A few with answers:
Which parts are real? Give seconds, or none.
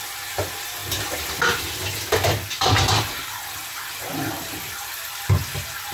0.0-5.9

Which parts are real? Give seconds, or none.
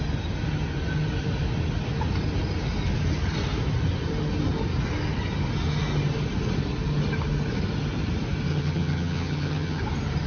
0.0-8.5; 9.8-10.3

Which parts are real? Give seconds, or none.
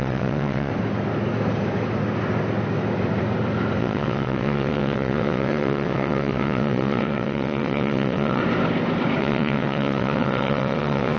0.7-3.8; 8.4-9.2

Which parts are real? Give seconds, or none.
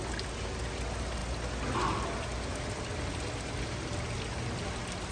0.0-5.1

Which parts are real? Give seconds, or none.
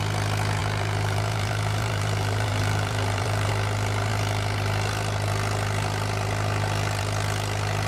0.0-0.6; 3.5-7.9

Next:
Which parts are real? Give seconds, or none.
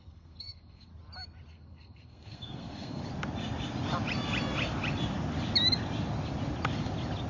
0.9-1.5; 3.0-7.3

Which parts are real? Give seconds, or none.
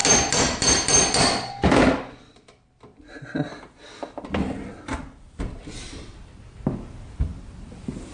0.0-8.1